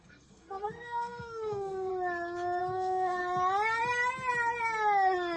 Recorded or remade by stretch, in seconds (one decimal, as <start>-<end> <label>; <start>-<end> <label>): 0.0-1.9 remade; 1.9-2.6 recorded; 2.6-3.2 remade; 3.2-5.4 recorded